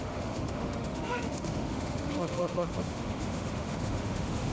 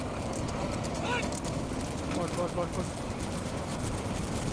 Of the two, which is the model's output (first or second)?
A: first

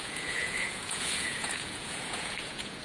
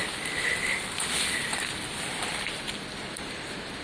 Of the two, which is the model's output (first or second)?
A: first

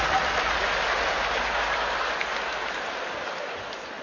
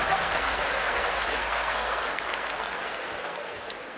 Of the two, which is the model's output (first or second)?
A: second